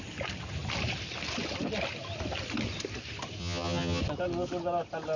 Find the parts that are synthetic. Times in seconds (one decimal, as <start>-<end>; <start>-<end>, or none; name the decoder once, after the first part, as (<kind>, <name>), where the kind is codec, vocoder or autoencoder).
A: 3.4-4.0 (vocoder, HiFi-GAN)